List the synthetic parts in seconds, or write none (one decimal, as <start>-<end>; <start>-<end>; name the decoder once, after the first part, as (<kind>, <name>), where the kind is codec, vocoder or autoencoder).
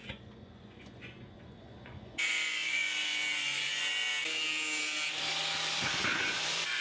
0.0-4.1 (vocoder, Vocos); 6.1-6.8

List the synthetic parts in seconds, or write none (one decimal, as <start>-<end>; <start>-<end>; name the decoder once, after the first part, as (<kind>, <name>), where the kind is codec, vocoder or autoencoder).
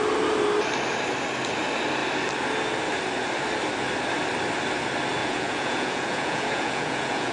5.2-7.3 (vocoder, Vocos)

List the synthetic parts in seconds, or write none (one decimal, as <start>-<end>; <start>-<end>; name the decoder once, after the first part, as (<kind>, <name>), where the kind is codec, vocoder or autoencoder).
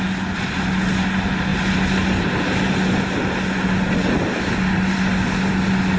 none